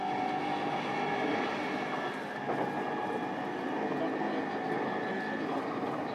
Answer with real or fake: real